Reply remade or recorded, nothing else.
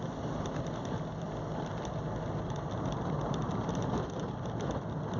remade